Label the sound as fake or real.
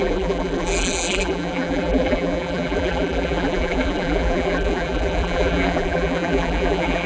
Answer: fake